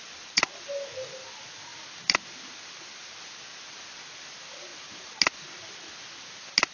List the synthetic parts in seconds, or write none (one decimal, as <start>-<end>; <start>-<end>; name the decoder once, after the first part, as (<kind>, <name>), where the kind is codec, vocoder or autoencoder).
none